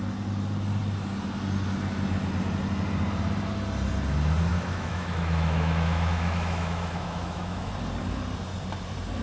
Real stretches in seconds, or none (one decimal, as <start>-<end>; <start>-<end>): 0.0-4.5; 7.7-9.2